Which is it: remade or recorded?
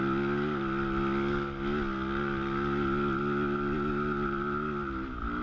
recorded